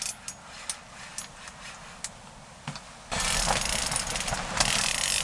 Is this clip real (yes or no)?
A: yes